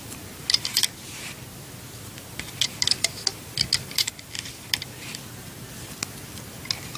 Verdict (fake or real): real